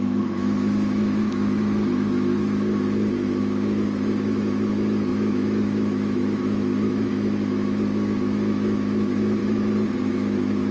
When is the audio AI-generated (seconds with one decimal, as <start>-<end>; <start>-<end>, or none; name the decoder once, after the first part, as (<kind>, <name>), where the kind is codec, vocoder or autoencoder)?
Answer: 0.0-9.4 (autoencoder, DAC-VAE); 10.1-10.7